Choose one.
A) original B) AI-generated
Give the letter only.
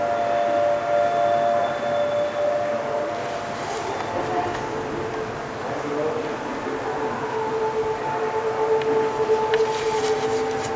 A